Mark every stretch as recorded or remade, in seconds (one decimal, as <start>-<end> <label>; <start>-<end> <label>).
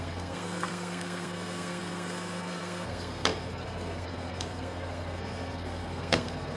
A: 0.0-6.6 remade